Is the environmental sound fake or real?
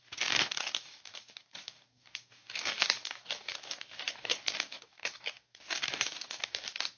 fake